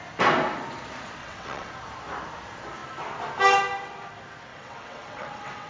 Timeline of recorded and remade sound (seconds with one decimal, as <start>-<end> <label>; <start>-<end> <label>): 0.0-1.2 recorded; 1.2-1.7 remade; 1.7-4.5 recorded; 4.5-5.7 remade